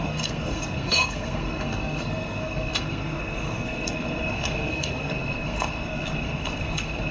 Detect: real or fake fake